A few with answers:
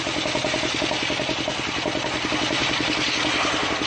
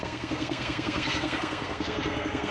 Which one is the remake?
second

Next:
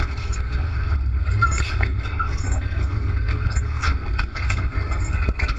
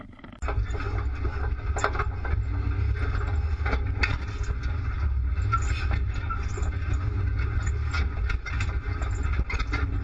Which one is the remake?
first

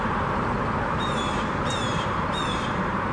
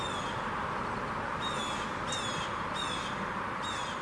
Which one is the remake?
first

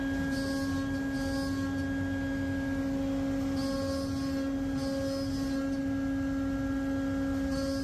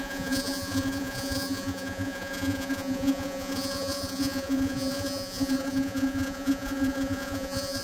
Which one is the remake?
second